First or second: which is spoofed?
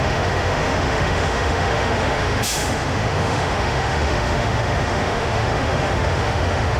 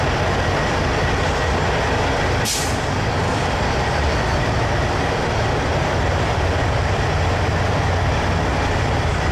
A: first